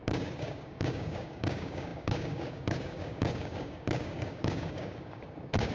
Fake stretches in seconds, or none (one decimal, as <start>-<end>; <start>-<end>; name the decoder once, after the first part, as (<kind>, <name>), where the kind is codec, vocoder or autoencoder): 0.0-5.7 (codec, DAC)